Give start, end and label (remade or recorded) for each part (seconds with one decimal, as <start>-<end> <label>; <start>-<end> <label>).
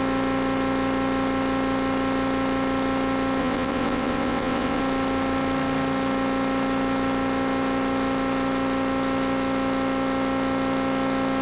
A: 0.0-3.4 recorded; 3.4-4.8 remade; 4.8-11.4 recorded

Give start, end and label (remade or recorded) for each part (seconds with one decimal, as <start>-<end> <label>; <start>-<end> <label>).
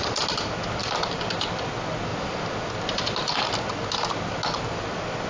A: 0.0-0.8 recorded; 0.8-1.4 remade; 1.4-5.3 recorded